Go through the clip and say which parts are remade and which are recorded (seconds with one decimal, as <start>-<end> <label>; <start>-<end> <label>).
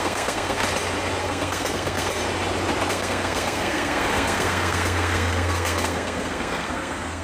0.0-0.6 remade; 0.6-1.2 recorded; 1.2-2.2 remade; 2.2-2.9 recorded; 2.9-7.2 remade